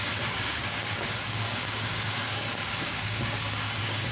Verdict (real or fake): fake